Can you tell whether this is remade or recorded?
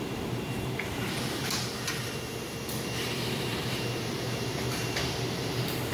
remade